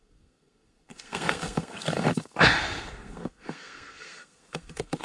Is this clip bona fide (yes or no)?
no